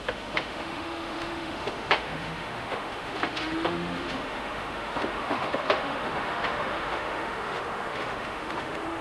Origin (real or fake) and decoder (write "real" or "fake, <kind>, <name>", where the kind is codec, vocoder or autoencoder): fake, autoencoder, DAC-VAE